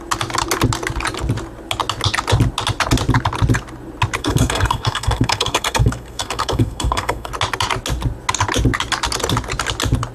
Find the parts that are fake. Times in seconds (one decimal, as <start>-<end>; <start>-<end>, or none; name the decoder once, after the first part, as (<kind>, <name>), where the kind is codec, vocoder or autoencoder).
4.2-7.3 (codec, SNAC)

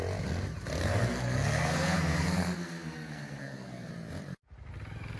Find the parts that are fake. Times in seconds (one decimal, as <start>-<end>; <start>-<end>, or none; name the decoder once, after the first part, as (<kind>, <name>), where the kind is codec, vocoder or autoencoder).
0.8-3.9 (codec, SNAC)

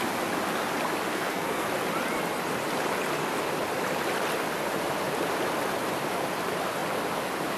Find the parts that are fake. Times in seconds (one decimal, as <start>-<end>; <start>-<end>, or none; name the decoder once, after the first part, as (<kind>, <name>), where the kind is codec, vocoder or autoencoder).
1.1-1.7 (codec, SNAC)

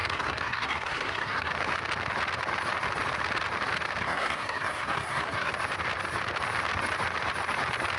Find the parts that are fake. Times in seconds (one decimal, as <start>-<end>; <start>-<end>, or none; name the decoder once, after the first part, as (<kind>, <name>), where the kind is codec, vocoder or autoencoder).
0.0-1.5 (codec, SNAC); 4.0-5.5

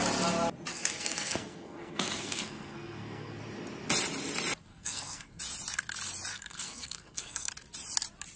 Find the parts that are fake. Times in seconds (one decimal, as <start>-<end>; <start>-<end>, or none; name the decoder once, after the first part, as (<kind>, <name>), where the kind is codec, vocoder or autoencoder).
0.7-3.4 (codec, SNAC); 4.7-5.4; 6.3-7.5

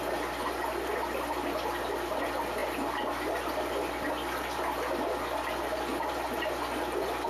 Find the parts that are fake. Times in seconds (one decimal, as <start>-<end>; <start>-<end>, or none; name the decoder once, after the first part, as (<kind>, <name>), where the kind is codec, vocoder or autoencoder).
none

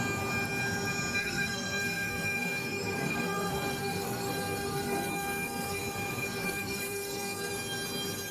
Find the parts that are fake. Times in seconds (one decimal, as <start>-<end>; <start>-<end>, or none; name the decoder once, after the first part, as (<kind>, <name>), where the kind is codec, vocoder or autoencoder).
1.2-5.8 (codec, SNAC); 6.4-7.5